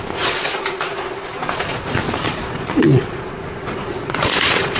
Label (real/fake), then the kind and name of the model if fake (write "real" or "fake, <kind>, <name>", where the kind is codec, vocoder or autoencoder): fake, vocoder, Vocos